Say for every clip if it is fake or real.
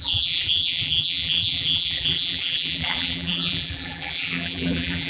fake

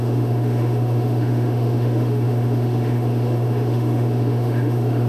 fake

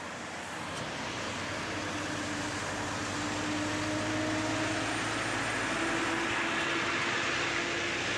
real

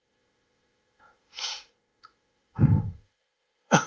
fake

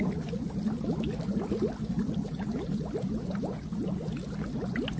real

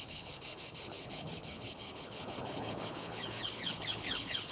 fake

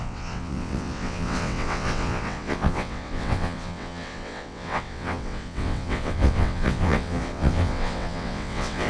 fake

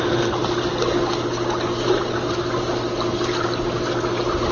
real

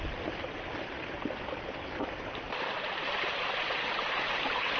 fake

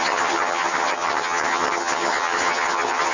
fake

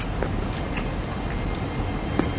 real